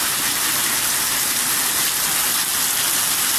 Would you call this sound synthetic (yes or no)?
no